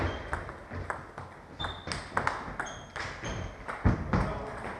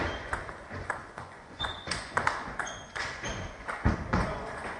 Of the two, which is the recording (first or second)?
first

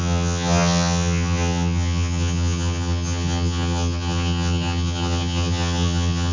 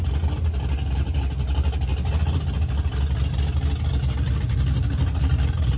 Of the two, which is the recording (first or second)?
second